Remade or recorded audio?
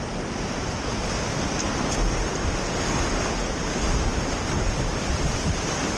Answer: recorded